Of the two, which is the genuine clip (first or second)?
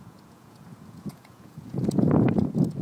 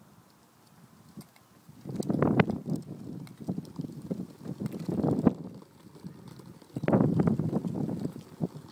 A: second